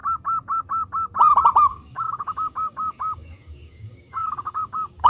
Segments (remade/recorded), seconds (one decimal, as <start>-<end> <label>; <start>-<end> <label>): 0.0-1.7 recorded; 1.7-5.1 remade